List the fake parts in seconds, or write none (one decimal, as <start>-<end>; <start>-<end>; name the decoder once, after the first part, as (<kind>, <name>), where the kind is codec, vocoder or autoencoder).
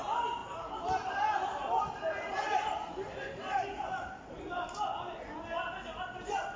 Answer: none